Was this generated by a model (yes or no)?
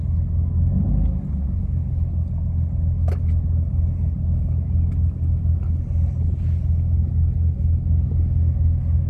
no